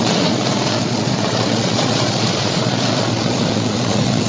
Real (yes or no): no